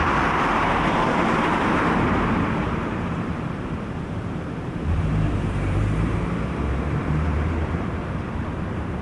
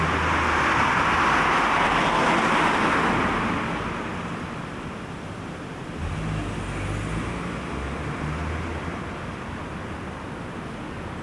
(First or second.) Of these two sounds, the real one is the second